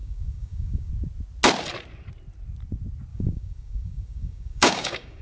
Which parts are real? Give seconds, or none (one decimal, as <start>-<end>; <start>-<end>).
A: 0.9-3.1